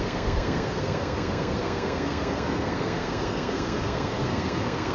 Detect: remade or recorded remade